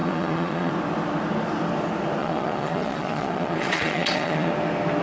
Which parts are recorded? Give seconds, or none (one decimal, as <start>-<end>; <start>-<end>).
0.7-2.2; 4.5-5.0